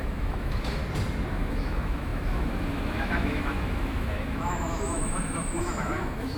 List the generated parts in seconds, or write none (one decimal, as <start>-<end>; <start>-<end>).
0.0-0.8; 1.3-6.4